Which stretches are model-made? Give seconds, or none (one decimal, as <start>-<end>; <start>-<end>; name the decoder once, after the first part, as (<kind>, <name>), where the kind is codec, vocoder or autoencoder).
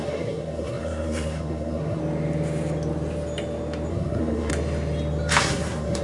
0.0-2.0 (codec, SNAC); 3.9-4.5; 5.4-6.0